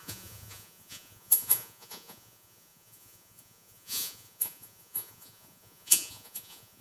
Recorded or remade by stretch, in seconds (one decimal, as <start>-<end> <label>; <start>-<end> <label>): 0.0-6.8 remade